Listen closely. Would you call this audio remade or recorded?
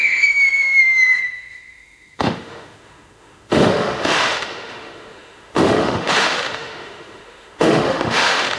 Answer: remade